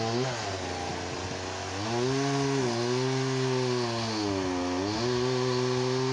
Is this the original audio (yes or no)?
yes